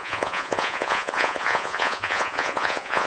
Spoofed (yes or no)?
yes